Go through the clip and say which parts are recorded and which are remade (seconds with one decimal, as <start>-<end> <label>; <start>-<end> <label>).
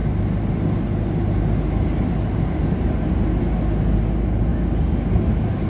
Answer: 0.0-5.7 recorded